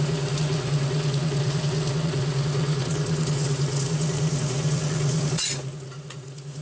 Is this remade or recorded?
remade